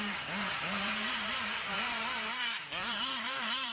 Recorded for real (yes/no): no